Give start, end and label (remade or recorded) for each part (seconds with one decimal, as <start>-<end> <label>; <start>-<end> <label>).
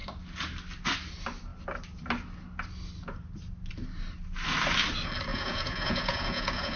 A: 0.0-5.3 recorded; 5.3-6.8 remade